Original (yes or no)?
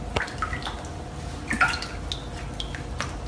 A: yes